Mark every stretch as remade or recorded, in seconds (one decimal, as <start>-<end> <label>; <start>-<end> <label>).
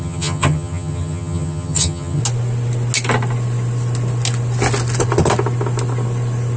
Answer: 0.0-2.2 remade; 2.2-6.6 recorded